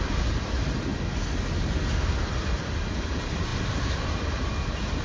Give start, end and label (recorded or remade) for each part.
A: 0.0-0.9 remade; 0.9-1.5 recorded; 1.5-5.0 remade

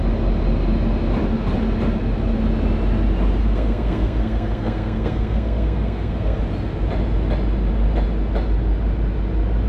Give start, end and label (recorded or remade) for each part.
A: 0.0-3.4 recorded; 3.4-6.4 remade; 6.4-9.7 recorded

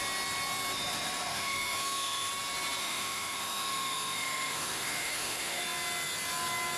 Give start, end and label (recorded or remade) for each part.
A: 0.0-1.3 recorded; 1.3-2.3 remade; 2.3-2.8 recorded; 2.8-5.6 remade; 5.6-6.8 recorded

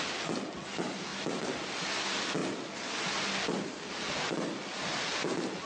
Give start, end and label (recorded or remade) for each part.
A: 0.0-5.7 recorded

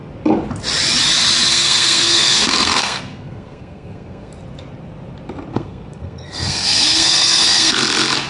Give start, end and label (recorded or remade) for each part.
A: 0.0-1.5 recorded; 1.5-4.3 remade; 4.3-5.5 recorded; 5.5-7.8 remade; 7.8-8.3 recorded